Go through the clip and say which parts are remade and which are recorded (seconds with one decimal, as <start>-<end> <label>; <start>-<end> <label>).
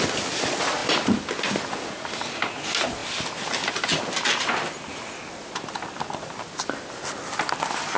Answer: 0.0-8.0 recorded